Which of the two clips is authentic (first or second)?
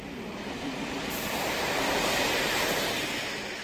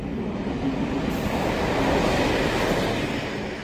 second